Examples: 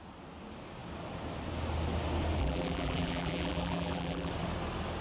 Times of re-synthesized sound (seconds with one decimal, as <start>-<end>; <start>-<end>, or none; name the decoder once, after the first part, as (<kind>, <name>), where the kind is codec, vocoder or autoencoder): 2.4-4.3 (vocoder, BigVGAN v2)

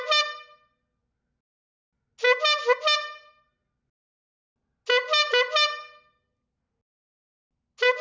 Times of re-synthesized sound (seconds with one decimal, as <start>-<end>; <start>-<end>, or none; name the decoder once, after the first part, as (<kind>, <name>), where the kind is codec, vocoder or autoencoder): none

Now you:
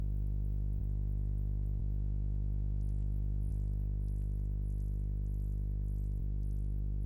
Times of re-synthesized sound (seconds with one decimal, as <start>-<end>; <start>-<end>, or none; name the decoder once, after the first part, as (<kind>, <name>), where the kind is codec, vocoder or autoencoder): 0.8-1.8 (vocoder, BigVGAN v2)